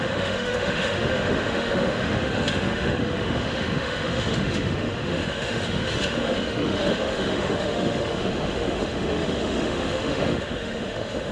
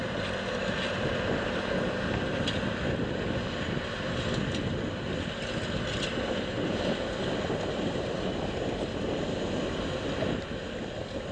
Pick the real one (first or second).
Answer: second